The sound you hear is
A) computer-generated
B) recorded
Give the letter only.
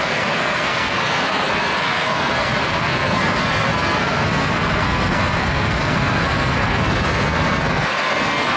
A